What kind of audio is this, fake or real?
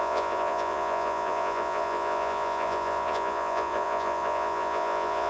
fake